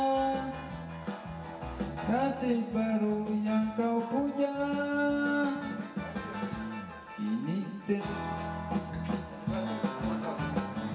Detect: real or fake real